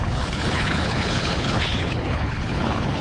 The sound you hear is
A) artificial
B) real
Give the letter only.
A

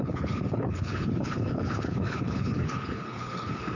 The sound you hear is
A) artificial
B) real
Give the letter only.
A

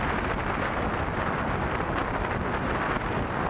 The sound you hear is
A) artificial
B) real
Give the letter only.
B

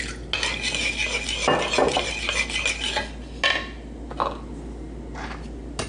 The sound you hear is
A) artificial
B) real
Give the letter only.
B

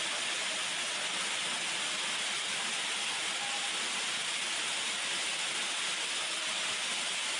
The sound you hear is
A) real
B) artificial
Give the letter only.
A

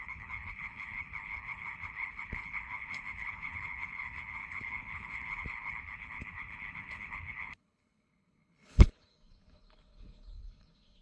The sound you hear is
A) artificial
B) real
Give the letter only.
A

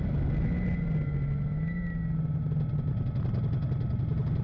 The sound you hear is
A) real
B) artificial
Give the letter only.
A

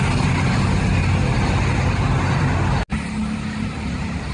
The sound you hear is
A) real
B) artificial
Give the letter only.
A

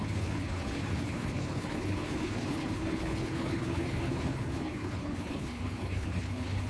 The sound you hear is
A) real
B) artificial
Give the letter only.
B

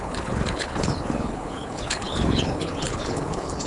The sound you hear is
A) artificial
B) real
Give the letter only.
A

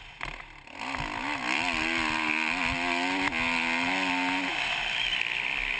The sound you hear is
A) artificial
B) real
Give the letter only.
B